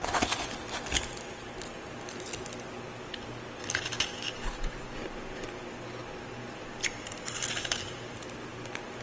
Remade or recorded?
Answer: recorded